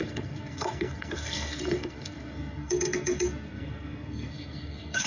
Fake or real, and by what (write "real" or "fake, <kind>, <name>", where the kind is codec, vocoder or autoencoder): fake, codec, SNAC